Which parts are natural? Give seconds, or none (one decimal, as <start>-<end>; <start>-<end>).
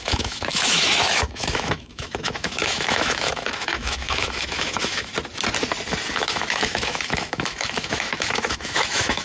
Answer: 5.1-6.1